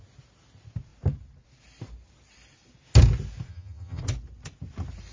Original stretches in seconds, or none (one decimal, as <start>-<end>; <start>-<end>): 0.0-3.5; 4.0-5.1